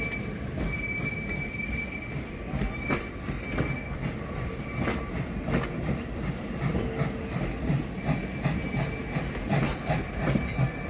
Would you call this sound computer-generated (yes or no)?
no